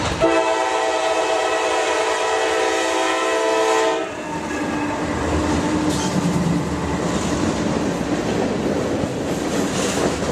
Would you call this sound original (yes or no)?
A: yes